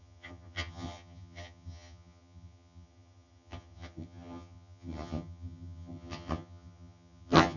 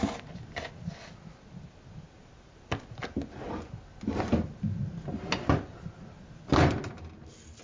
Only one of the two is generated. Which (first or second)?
first